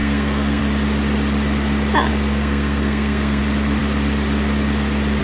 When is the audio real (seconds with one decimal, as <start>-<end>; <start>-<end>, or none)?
0.6-2.1; 3.4-5.2